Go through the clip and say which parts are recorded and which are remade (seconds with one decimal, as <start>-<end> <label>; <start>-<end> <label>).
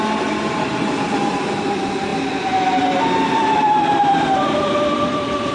0.0-2.1 recorded; 2.1-5.5 remade